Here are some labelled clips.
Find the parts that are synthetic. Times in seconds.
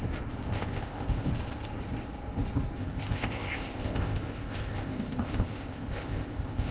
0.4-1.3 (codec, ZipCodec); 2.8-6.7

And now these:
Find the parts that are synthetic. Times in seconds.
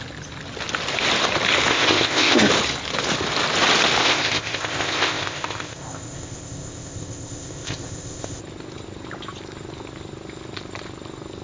1.7-2.5 (codec, ZipCodec); 4.0-8.4